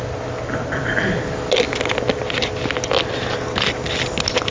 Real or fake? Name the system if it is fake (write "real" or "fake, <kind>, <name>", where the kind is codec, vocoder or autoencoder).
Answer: real